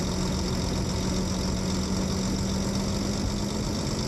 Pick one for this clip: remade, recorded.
recorded